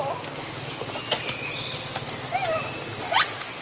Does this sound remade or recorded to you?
recorded